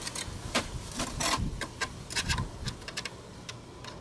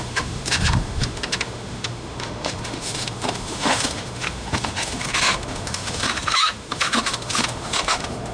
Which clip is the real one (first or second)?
first